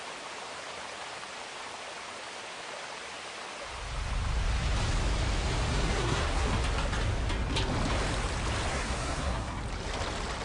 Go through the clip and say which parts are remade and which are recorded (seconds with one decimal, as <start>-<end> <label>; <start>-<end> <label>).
0.0-5.7 recorded; 5.7-6.5 remade; 6.5-8.7 recorded; 8.7-9.6 remade; 9.6-10.4 recorded